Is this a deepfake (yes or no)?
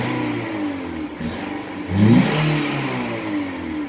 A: no